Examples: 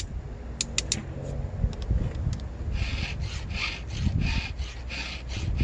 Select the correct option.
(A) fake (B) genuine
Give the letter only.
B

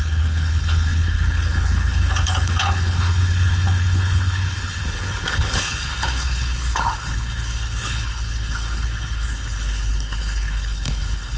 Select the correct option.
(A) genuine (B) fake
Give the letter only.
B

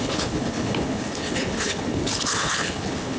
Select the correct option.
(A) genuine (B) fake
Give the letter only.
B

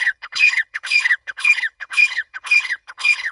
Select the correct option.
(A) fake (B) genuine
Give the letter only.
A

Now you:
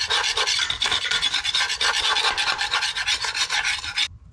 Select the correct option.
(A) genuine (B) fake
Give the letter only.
A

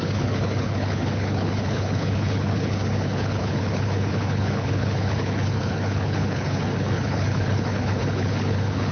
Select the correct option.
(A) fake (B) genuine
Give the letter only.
A